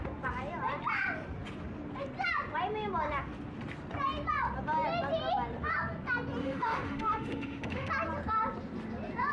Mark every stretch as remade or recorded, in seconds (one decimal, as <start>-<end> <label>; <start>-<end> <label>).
0.0-6.4 recorded; 6.4-7.9 remade; 7.9-9.3 recorded